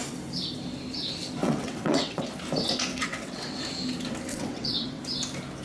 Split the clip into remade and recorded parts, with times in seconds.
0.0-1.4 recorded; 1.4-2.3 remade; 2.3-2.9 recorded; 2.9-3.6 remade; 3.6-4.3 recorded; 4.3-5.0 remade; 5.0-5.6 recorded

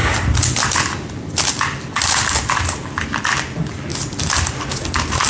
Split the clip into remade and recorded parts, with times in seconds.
0.0-5.3 recorded